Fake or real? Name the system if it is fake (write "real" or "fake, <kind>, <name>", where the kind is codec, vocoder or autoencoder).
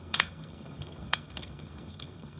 fake, codec, SNAC